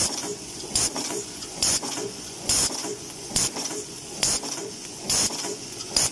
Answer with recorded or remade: remade